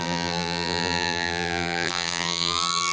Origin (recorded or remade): remade